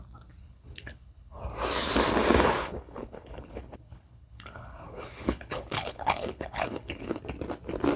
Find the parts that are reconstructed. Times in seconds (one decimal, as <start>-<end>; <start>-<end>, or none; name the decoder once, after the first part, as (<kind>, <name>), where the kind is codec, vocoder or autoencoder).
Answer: 0.4-1.4 (codec, HILCodec); 2.6-7.2